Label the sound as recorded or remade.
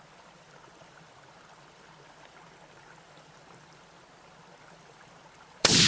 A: remade